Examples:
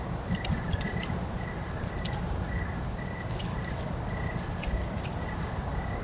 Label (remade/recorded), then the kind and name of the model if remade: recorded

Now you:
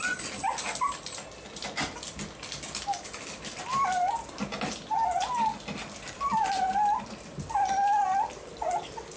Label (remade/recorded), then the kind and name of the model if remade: recorded